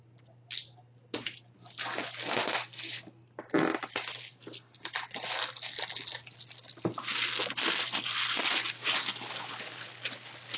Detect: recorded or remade recorded